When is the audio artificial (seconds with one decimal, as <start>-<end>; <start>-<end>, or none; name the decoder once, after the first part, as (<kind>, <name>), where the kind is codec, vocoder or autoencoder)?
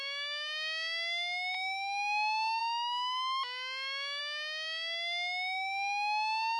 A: none